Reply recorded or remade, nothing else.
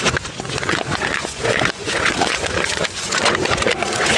remade